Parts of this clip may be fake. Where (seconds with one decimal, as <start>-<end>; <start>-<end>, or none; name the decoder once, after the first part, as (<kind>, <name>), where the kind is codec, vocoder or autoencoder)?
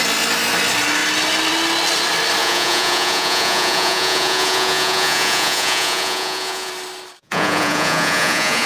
2.4-6.7 (vocoder, Vocos); 7.2-8.7